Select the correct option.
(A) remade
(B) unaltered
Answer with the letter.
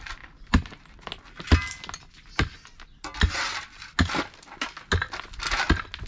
B